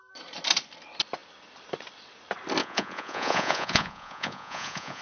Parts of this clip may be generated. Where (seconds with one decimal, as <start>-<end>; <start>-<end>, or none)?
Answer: 2.6-5.0